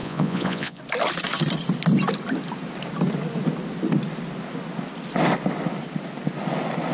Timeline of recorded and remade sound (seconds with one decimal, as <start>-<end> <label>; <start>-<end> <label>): 0.0-0.8 remade; 0.8-6.9 recorded